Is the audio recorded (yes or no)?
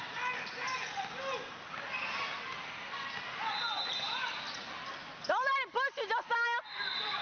yes